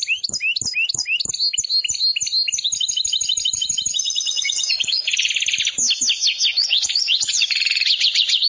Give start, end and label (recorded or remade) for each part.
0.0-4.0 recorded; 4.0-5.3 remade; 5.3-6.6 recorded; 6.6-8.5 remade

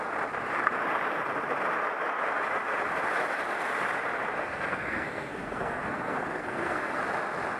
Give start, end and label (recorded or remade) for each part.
0.0-4.4 recorded; 4.4-7.0 remade; 7.0-7.6 recorded